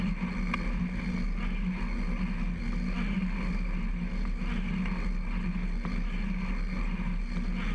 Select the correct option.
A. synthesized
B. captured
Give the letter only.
B